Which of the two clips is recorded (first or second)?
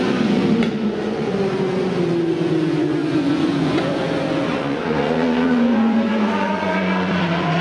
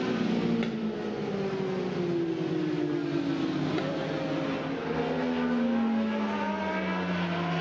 second